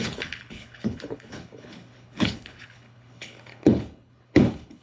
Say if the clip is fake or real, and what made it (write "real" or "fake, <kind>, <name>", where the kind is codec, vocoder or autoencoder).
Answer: fake, codec, HILCodec